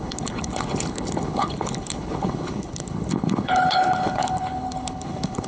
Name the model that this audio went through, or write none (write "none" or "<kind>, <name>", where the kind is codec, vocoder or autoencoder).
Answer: codec, HILCodec